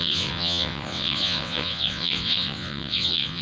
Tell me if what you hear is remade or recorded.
remade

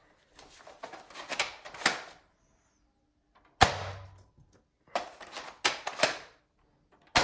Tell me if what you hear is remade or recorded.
recorded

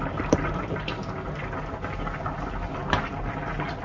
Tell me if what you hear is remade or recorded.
recorded